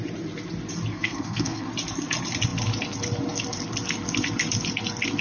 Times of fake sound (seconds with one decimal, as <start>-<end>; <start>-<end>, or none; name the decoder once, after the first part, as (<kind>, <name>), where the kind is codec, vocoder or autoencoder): 0.9-1.7 (codec, SNAC)